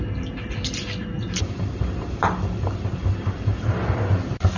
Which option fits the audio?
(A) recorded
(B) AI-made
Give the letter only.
A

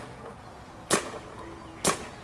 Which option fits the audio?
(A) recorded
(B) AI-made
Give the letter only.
B